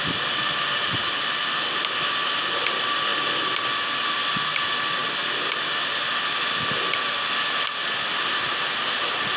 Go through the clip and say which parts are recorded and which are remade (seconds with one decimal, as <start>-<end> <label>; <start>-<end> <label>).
0.0-9.4 recorded

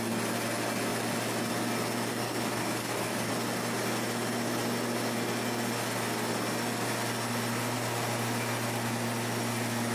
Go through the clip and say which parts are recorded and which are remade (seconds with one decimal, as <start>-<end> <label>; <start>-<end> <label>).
0.0-2.1 recorded; 2.1-3.3 remade; 3.3-9.9 recorded

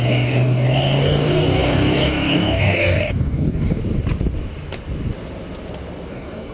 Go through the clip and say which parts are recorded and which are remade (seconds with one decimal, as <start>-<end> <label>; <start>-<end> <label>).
0.0-3.8 remade; 3.8-6.1 recorded; 6.1-6.5 remade

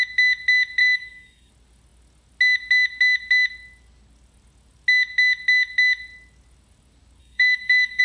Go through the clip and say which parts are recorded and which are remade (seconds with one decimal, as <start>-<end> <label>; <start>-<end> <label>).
0.0-0.8 recorded; 0.8-1.5 remade; 1.5-7.2 recorded; 7.2-8.0 remade

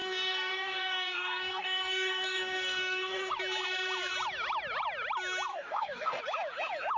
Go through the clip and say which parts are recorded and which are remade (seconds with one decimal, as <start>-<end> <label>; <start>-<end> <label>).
0.0-3.3 remade; 3.3-5.5 recorded; 5.5-6.2 remade; 6.2-7.0 recorded